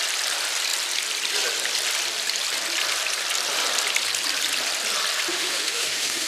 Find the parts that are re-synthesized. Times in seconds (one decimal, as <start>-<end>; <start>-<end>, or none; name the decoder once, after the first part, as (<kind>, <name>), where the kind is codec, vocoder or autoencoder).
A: 5.3-6.3 (autoencoder, DAC-VAE)